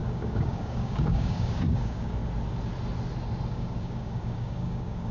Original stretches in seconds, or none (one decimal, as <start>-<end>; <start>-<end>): 2.2-3.5